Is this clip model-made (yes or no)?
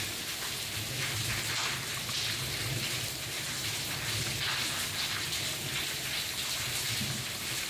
no